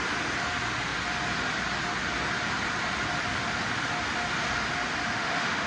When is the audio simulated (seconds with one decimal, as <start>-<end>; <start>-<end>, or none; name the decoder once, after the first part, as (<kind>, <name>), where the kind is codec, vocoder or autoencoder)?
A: 5.1-5.7 (autoencoder, DAC-VAE)